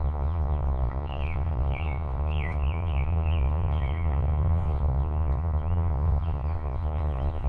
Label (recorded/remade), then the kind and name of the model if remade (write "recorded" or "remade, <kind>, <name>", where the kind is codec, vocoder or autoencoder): remade, vocoder, Vocos